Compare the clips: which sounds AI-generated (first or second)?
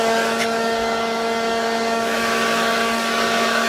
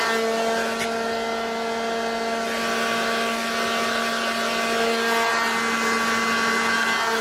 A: first